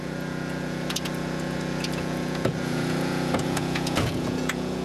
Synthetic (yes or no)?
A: yes